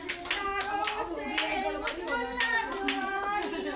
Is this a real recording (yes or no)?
yes